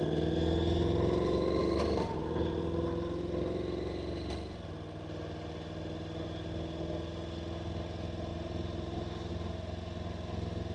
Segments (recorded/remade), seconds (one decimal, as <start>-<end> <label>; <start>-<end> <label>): 0.0-1.6 recorded; 1.6-2.4 remade; 2.4-8.3 recorded; 8.3-9.3 remade; 9.3-10.7 recorded

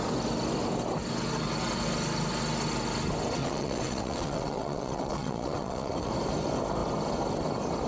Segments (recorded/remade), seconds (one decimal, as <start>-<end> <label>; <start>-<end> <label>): 0.0-3.4 recorded; 3.4-6.1 remade; 6.1-7.9 recorded

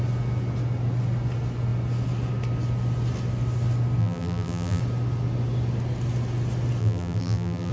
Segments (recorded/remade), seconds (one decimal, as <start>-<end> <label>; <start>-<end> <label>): 0.0-4.0 recorded; 4.0-4.8 remade; 4.8-6.8 recorded; 6.8-7.7 remade

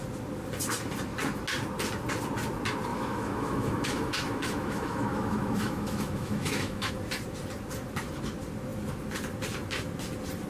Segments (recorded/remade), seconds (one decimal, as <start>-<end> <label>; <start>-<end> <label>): 0.0-2.9 recorded; 2.9-6.9 remade; 6.9-10.5 recorded